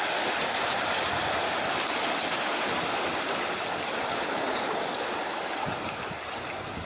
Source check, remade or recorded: recorded